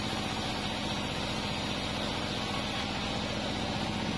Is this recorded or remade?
recorded